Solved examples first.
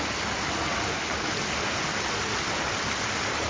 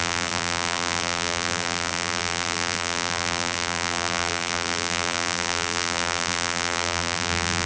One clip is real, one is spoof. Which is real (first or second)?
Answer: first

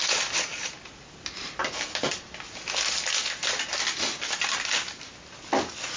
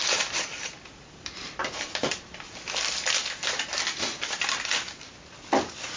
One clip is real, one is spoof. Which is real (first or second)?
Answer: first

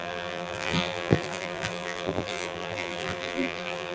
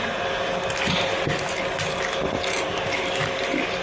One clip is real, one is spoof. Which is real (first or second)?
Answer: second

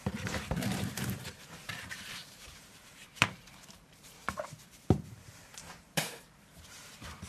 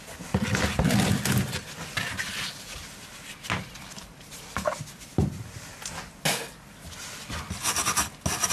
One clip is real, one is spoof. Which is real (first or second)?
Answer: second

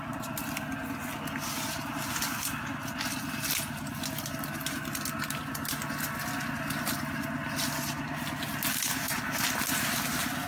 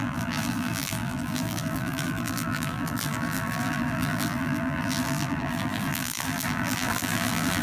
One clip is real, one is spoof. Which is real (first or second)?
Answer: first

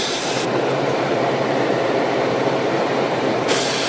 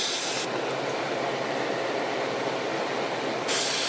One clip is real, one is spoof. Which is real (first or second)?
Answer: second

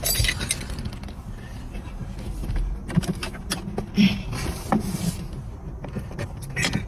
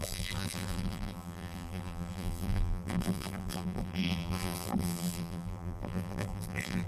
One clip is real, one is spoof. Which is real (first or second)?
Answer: first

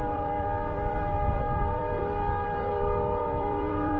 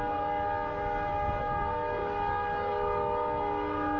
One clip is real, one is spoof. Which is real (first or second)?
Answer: second